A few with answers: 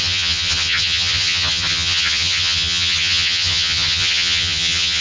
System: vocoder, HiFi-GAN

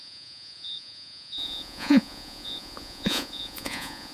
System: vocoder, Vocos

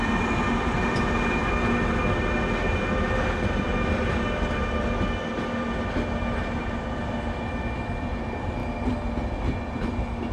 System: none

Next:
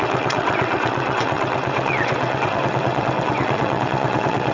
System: vocoder, WaveNeXt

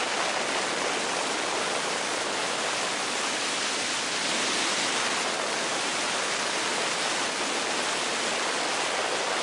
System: none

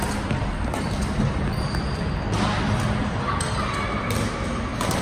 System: none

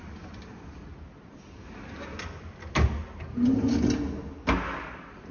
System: none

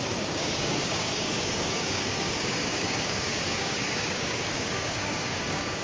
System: codec, DAC